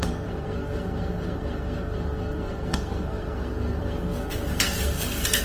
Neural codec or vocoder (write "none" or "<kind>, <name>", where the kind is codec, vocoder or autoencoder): codec, SNAC